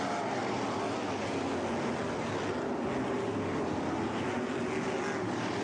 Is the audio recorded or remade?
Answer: recorded